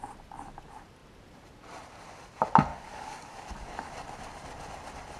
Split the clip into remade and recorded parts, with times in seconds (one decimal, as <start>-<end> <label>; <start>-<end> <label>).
0.0-2.7 recorded; 2.7-3.9 remade; 3.9-5.2 recorded